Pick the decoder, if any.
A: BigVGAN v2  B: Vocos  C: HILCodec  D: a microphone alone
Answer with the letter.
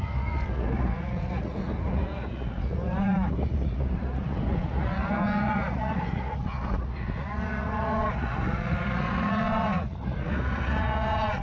B